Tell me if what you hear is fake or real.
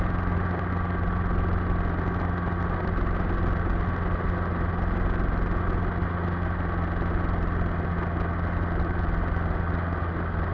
real